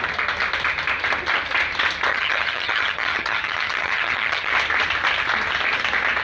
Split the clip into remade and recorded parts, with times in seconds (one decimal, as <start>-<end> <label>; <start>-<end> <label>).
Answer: 0.0-2.1 recorded; 2.1-4.5 remade; 4.5-6.2 recorded